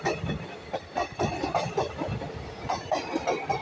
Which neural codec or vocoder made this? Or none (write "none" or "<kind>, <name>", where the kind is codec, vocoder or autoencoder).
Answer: none